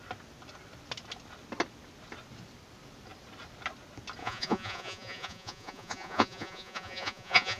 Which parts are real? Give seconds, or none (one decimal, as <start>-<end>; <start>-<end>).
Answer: 0.0-4.2